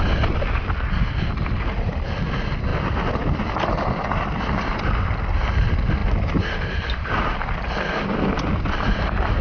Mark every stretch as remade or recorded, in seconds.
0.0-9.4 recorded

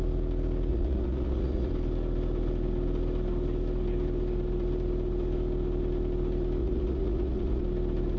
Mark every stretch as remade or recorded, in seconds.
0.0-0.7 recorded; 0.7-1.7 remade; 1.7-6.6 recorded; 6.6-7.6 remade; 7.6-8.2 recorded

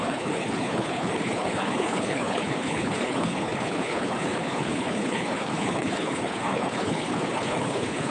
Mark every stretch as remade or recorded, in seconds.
0.0-8.1 remade